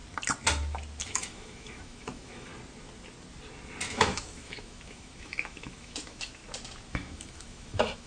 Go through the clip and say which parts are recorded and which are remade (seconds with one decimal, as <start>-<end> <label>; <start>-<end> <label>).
0.0-1.0 recorded; 1.0-2.5 remade; 2.5-3.9 recorded; 3.9-6.4 remade; 6.4-6.9 recorded; 6.9-8.1 remade